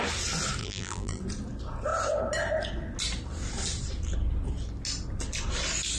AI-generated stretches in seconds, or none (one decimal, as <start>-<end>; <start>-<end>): 0.6-1.2